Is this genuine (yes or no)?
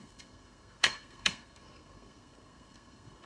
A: no